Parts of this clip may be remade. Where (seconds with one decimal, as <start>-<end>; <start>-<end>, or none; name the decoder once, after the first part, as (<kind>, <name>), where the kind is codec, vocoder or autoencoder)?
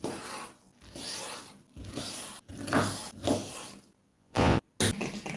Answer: 4.1-4.6 (vocoder, Vocos)